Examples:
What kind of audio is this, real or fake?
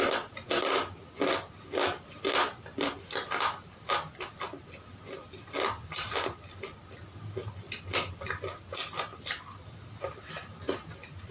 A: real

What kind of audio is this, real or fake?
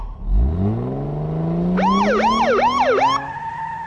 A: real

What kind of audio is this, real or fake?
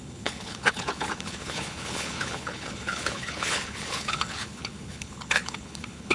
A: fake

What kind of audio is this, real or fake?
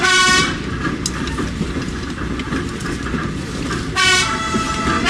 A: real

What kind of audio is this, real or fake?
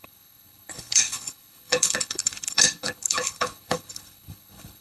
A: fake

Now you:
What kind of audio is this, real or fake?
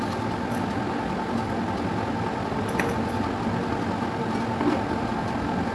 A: real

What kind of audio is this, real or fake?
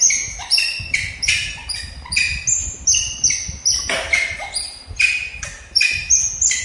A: real